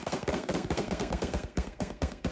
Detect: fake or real fake